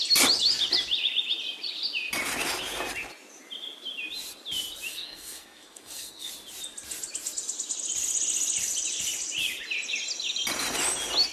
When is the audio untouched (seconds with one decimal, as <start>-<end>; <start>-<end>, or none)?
0.0-4.9; 6.3-11.3